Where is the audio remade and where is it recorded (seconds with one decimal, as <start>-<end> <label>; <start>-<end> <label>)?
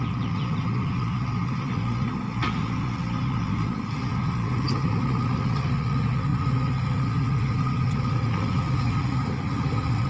0.0-10.1 remade